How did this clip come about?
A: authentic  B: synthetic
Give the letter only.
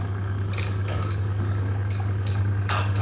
B